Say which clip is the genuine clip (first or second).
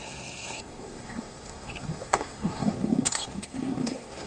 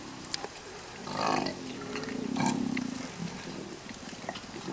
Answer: second